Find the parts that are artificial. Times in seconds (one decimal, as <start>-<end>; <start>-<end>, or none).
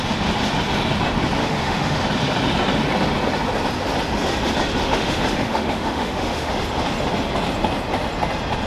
1.4-2.0; 4.8-6.5